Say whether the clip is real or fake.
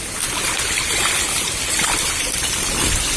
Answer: real